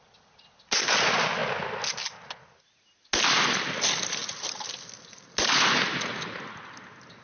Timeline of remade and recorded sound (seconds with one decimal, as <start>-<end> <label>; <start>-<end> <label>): 0.0-7.2 recorded